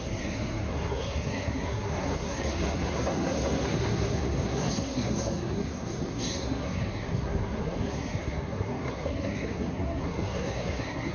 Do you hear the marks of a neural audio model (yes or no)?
yes